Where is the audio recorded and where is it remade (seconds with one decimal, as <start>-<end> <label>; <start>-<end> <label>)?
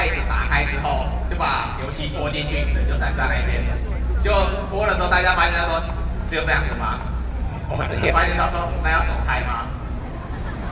0.0-7.5 recorded; 7.5-8.1 remade; 8.1-10.7 recorded